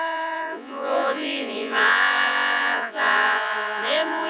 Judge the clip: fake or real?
fake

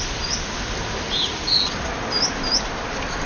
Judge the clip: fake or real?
real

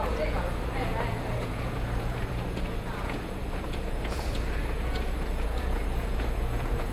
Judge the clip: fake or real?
fake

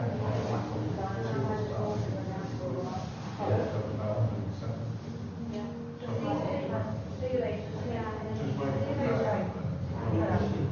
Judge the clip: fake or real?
real